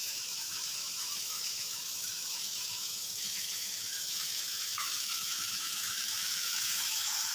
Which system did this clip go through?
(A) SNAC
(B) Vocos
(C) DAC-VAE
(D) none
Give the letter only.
C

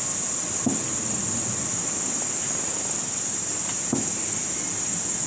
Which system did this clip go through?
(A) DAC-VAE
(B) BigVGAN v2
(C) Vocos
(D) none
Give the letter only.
D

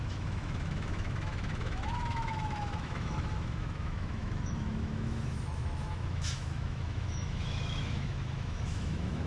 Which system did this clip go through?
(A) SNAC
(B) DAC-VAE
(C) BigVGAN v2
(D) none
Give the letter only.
B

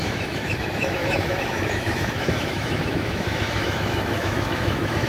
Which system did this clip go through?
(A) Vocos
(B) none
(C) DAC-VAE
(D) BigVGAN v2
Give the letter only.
C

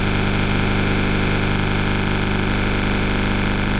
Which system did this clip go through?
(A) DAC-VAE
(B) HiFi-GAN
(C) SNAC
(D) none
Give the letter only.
A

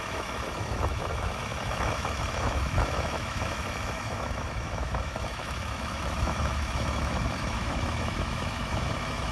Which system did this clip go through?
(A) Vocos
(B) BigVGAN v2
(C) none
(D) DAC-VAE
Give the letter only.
D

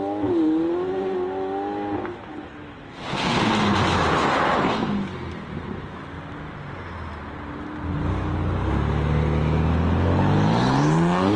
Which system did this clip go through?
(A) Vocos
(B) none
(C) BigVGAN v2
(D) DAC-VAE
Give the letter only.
B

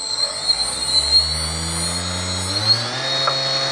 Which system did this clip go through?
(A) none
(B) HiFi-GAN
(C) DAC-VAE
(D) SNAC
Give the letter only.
A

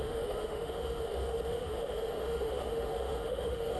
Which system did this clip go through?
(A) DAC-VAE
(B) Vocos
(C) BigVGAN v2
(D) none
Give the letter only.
A